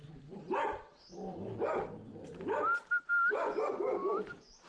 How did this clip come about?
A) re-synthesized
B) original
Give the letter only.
B